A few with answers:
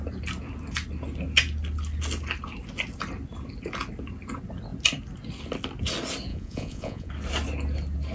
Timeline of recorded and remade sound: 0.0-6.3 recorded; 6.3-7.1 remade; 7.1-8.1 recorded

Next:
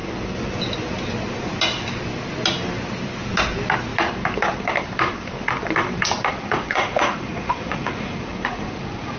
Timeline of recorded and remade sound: 0.0-6.2 recorded; 6.2-9.2 remade

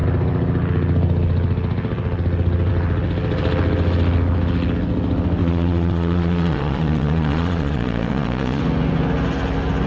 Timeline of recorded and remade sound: 0.0-5.4 recorded; 5.4-8.6 remade; 8.6-9.9 recorded

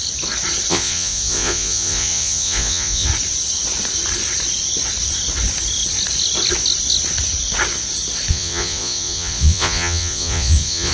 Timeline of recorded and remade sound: 0.0-0.7 recorded; 0.7-3.1 remade; 3.1-8.3 recorded; 8.3-10.9 remade

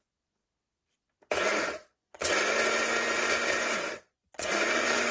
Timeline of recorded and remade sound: 0.0-0.4 remade; 0.4-1.6 recorded; 1.6-2.2 remade; 2.2-4.0 recorded; 4.0-5.1 remade

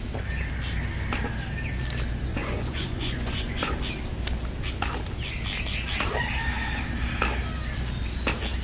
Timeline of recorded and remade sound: 0.0-2.3 recorded; 2.3-3.7 remade; 3.7-8.6 recorded

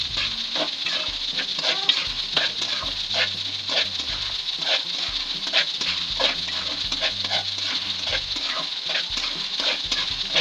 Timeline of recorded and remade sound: 0.0-10.4 recorded

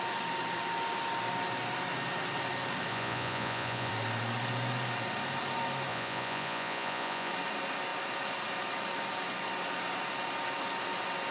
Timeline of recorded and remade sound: 0.0-2.9 recorded; 2.9-3.9 remade; 3.9-5.9 recorded; 5.9-7.3 remade; 7.3-11.3 recorded